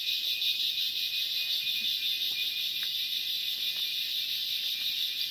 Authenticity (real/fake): fake